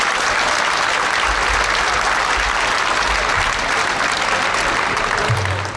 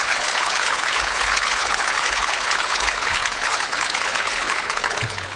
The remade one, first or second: second